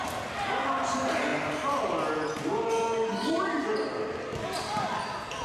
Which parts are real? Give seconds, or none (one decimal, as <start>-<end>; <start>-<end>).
0.0-5.4